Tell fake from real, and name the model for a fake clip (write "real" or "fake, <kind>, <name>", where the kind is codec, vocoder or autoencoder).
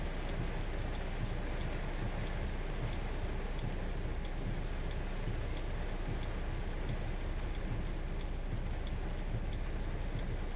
real